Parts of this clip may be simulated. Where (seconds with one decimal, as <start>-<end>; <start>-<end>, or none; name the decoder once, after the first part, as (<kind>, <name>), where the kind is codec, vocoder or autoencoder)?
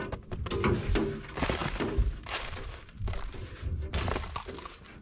1.6-3.4 (vocoder, BigVGAN v2)